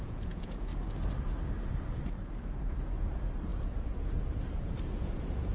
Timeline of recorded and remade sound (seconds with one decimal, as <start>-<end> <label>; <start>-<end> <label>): 0.0-0.7 remade; 0.7-2.6 recorded; 2.6-5.5 remade